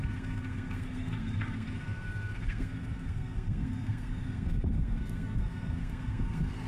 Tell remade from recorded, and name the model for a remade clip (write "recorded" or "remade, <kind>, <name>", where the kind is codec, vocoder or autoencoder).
remade, codec, SNAC